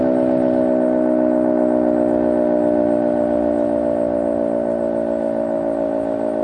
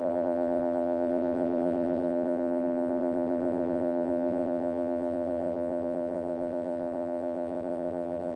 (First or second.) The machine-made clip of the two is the second